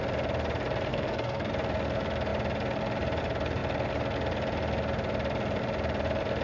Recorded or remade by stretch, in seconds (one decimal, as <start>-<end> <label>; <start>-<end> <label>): 0.0-0.9 recorded; 0.9-1.5 remade; 1.5-6.4 recorded